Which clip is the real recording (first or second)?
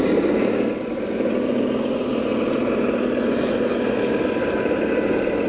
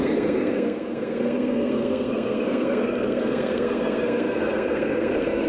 first